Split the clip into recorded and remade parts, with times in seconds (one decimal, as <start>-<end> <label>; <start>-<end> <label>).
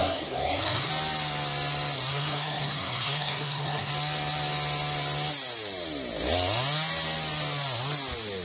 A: 0.0-0.9 remade; 0.9-2.1 recorded; 2.1-3.9 remade; 3.9-8.4 recorded